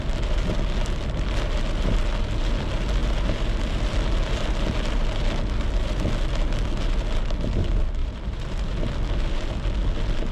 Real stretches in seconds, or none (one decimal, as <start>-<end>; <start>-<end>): 0.0-8.0; 8.7-10.3